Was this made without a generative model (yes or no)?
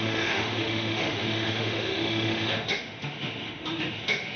no